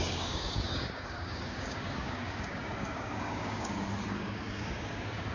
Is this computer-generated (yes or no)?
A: yes